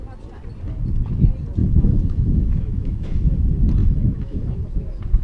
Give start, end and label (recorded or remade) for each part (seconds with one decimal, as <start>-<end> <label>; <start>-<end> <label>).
0.0-1.6 recorded; 1.6-3.4 remade; 3.4-3.8 recorded; 3.8-4.6 remade; 4.6-5.2 recorded